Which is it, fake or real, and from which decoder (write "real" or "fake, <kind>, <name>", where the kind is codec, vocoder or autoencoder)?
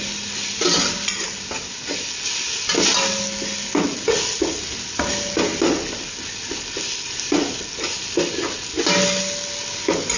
real